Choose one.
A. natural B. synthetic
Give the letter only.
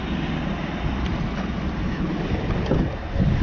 A